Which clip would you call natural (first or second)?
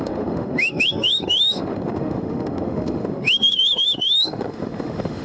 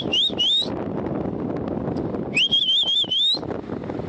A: second